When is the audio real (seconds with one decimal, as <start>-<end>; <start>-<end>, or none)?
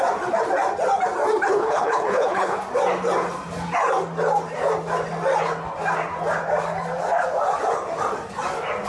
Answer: 0.0-1.5; 2.6-8.9